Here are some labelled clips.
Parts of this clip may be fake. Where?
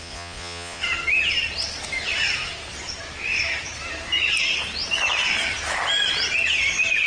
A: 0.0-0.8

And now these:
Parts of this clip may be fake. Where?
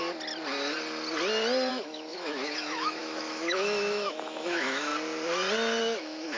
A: 1.7-4.9; 5.8-6.4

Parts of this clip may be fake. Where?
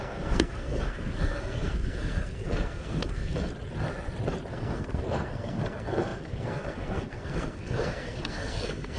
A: 0.0-3.5; 4.5-9.0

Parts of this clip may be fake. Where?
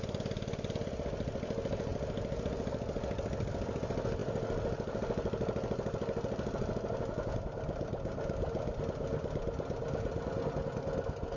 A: none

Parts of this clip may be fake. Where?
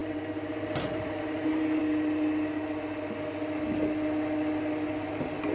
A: 0.0-1.8; 5.1-5.5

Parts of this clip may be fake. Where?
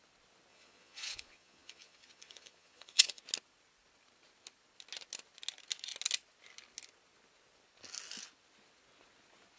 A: 0.5-3.2